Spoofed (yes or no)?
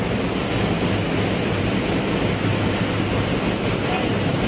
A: no